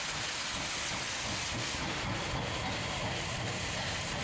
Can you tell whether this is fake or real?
real